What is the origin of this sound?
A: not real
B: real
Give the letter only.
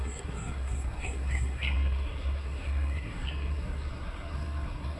A